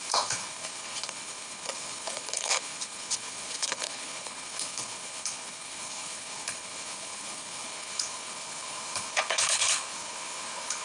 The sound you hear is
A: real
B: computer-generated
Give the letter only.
B